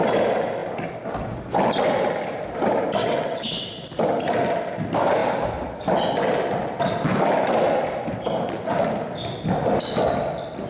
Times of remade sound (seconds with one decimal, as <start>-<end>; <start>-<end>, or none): 3.0-3.7